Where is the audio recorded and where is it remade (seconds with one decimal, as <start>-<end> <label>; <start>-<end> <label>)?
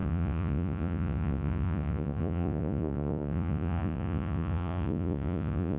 0.0-5.8 remade